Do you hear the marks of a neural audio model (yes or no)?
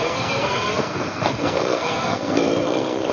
yes